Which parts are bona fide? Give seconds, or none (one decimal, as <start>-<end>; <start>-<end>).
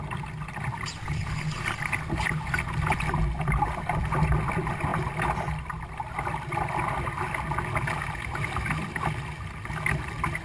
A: 0.0-10.4